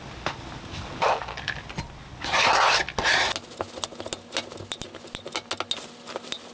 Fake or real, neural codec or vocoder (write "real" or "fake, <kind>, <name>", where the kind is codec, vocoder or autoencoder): real